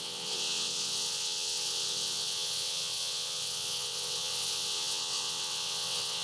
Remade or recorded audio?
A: remade